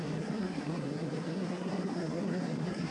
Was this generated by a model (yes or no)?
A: yes